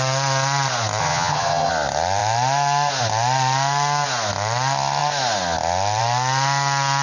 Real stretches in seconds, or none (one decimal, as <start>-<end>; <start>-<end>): 0.0-1.0; 1.7-7.0